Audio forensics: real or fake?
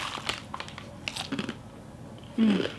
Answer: real